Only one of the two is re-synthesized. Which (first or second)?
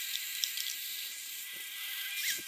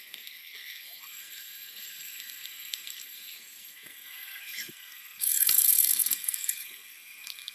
second